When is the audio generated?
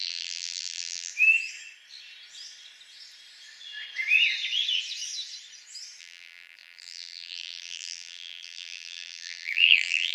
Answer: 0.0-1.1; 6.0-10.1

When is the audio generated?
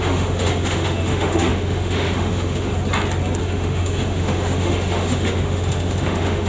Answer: 0.0-2.7; 3.4-6.5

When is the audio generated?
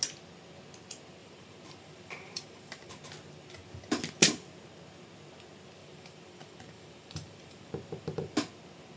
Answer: 1.2-2.9; 5.8-7.7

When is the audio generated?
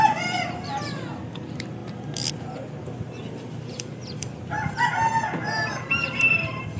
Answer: none